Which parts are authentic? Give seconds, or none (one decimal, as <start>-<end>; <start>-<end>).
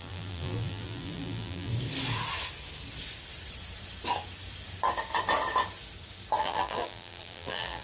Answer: 1.7-6.4